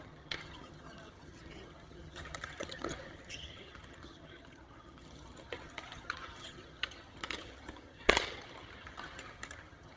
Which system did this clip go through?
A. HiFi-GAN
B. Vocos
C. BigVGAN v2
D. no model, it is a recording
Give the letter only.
A